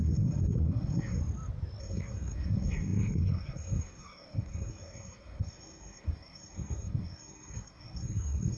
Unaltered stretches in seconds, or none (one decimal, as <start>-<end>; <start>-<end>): 1.2-1.8